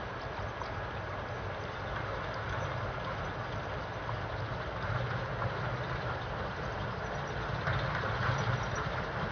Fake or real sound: real